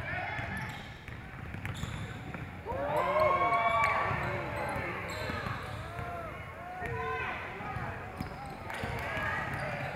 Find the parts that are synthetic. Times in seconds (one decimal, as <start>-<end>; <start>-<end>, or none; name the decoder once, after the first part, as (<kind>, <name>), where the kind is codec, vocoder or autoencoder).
0.0-2.8 (vocoder, BigVGAN v2); 3.9-5.0; 6.0-10.0